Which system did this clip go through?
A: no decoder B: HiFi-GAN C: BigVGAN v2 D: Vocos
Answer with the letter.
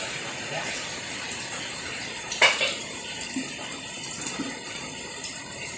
C